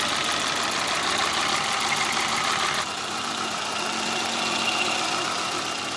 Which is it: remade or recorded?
remade